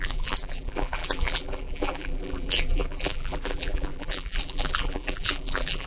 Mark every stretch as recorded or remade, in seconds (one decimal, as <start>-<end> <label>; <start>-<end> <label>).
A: 0.0-5.9 remade